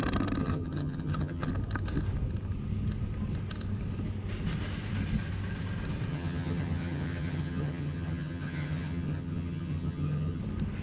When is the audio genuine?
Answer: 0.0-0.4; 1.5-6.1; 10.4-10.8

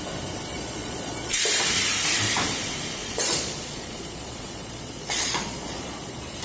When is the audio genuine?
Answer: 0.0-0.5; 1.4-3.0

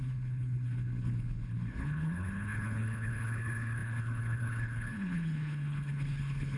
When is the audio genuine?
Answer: none

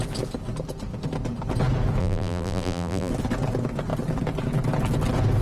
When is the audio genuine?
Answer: 0.0-2.0; 3.1-5.4

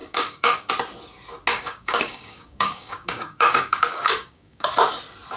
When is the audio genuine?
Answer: 0.7-1.5; 4.7-5.4